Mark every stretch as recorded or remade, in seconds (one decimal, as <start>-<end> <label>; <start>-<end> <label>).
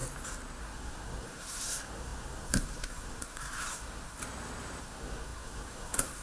0.0-0.6 recorded; 0.6-4.2 remade; 4.2-4.8 recorded; 4.8-6.2 remade